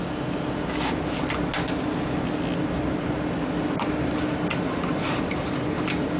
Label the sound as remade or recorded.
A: recorded